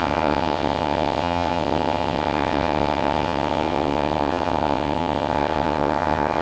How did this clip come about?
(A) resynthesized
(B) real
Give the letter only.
A